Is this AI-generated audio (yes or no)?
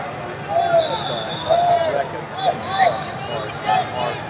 no